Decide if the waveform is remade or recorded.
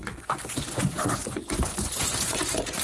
remade